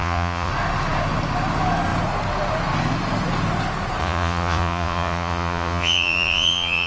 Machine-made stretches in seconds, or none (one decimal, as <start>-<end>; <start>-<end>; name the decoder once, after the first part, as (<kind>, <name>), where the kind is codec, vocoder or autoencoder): 0.0-0.5 (vocoder, Vocos); 4.0-6.9